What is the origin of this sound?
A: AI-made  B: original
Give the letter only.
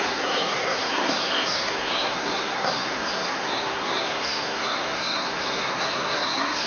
A